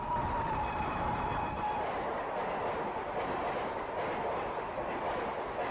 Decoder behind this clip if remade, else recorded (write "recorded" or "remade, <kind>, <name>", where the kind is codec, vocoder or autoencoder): recorded